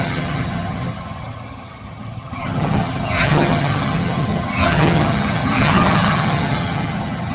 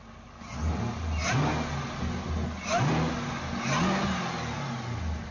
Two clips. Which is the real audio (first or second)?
second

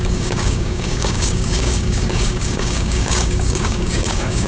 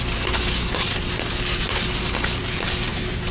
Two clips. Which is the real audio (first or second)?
second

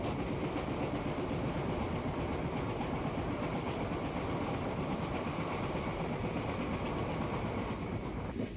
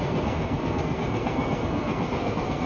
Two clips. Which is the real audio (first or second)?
first